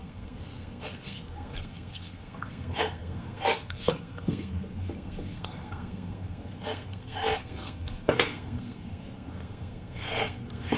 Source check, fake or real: fake